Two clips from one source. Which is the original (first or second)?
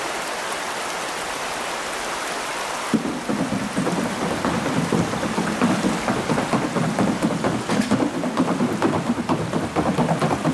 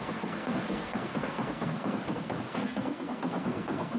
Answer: first